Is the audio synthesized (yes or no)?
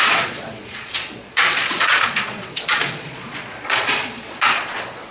yes